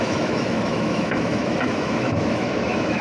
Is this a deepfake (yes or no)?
yes